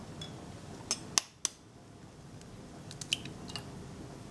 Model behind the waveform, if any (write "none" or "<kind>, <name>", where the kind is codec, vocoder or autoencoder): none